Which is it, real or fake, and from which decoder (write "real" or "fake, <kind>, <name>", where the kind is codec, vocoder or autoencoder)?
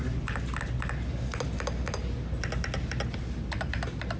real